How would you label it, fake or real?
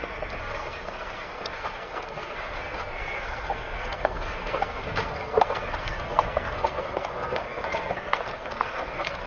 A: fake